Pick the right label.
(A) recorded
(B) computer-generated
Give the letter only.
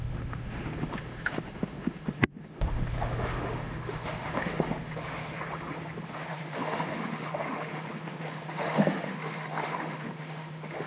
B